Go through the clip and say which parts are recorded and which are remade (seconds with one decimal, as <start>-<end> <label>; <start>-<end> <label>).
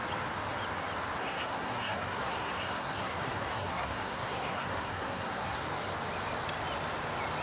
0.0-1.2 recorded; 1.2-5.6 remade; 5.6-7.4 recorded